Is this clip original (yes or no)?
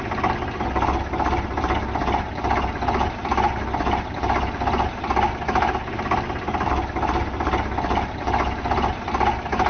yes